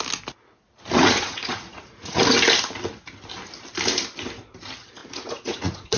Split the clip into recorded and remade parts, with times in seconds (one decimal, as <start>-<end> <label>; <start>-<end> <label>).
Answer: 0.0-1.0 recorded; 1.0-2.2 remade; 2.2-5.0 recorded; 5.0-6.0 remade

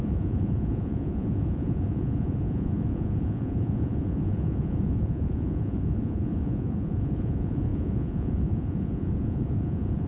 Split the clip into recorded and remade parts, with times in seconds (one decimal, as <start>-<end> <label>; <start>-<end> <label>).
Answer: 0.0-10.1 remade

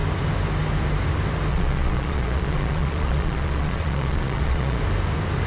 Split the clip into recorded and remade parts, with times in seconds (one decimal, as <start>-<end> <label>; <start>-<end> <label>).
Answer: 0.0-1.5 recorded; 1.5-4.8 remade; 4.8-5.5 recorded

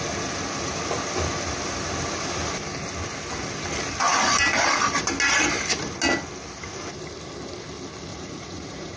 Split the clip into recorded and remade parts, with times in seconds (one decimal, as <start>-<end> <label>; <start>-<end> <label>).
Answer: 0.0-8.1 recorded; 8.1-9.0 remade

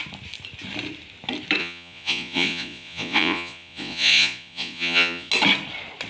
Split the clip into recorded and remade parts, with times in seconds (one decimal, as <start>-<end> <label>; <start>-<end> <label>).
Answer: 0.0-1.6 recorded; 1.6-5.3 remade; 5.3-6.1 recorded

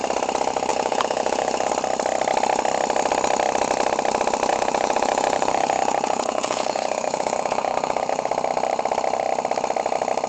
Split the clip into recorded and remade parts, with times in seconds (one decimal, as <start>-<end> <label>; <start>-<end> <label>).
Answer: 0.0-0.7 recorded; 0.7-1.7 remade; 1.7-4.5 recorded; 4.5-8.3 remade; 8.3-10.3 recorded

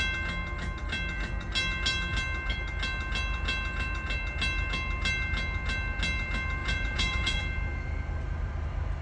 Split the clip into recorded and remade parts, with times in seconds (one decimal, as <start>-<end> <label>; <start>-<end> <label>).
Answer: 0.0-6.6 recorded; 6.6-7.4 remade; 7.4-9.0 recorded